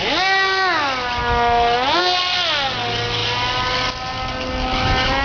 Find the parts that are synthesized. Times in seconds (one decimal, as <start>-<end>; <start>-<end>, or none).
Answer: none

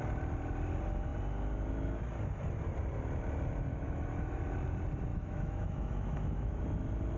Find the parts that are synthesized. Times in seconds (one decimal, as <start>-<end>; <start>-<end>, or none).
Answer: 3.7-4.4; 5.1-6.6

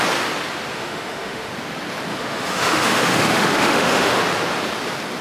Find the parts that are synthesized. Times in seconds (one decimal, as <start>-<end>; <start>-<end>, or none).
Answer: 0.7-1.5; 2.1-4.2

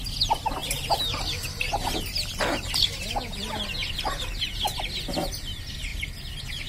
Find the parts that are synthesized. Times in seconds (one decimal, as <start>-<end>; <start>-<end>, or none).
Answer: none

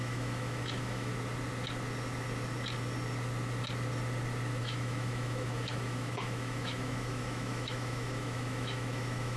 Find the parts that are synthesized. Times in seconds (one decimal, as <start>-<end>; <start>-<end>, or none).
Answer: 0.0-1.1; 4.6-9.4

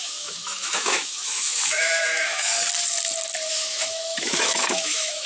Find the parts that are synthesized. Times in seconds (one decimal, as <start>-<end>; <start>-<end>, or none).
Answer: 0.0-2.5; 3.5-5.3

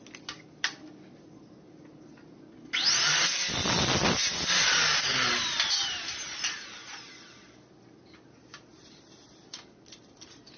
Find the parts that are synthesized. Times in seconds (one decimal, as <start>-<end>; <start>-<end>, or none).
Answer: none

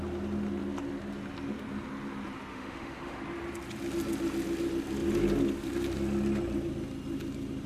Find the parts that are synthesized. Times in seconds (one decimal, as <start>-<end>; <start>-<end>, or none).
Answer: 2.5-3.2